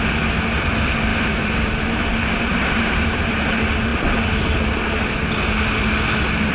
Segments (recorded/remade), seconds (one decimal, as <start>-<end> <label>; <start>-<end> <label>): 0.0-1.1 recorded; 1.1-3.3 remade; 3.3-6.5 recorded